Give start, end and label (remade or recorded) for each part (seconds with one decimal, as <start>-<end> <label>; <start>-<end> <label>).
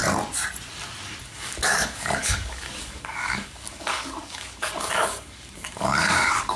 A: 0.0-1.2 recorded; 1.2-6.6 remade